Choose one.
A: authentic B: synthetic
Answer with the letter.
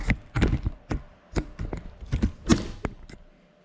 A